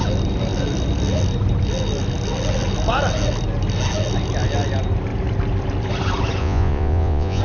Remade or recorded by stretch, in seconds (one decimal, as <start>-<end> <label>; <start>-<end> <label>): 0.0-6.4 recorded; 6.4-7.4 remade